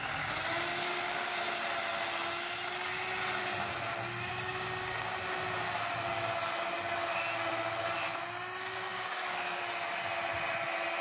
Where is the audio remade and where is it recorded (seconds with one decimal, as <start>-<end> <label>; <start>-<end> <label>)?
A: 0.0-0.7 recorded; 0.7-1.4 remade; 1.4-4.3 recorded; 4.3-5.1 remade; 5.1-8.9 recorded; 8.9-9.6 remade; 9.6-11.0 recorded